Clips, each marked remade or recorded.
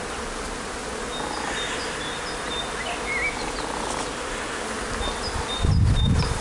recorded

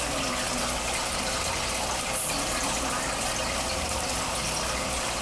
recorded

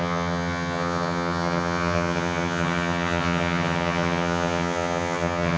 remade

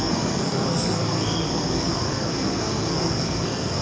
remade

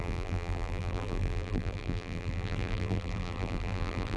remade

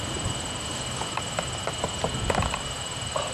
recorded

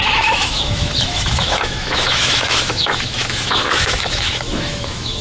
remade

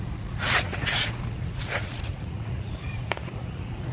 remade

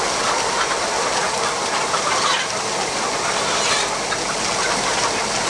recorded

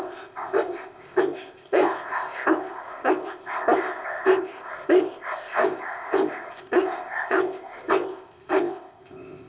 remade